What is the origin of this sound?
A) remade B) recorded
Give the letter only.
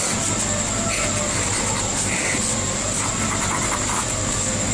B